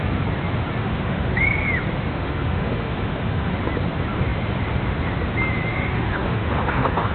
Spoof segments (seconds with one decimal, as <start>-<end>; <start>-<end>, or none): 0.8-1.4; 2.1-3.5; 5.7-7.1